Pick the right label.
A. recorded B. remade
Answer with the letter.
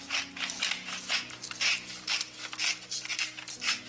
A